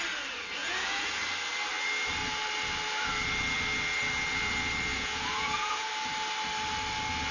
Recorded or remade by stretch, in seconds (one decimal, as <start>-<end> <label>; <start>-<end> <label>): 0.0-0.6 recorded; 0.6-1.2 remade; 1.2-4.9 recorded; 4.9-5.9 remade; 5.9-7.3 recorded